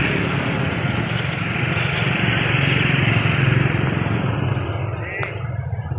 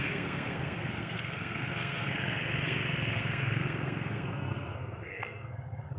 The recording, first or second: first